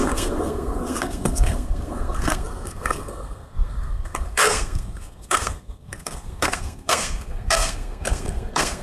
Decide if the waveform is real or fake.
fake